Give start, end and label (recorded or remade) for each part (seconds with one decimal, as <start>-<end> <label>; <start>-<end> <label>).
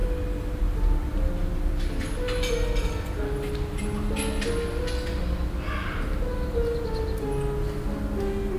0.0-8.6 recorded